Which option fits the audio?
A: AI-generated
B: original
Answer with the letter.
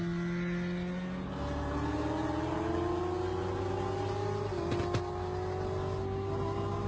B